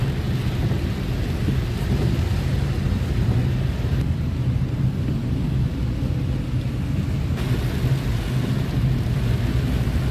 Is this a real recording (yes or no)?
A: yes